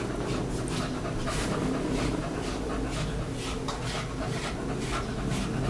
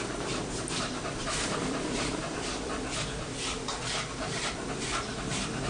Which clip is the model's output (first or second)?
second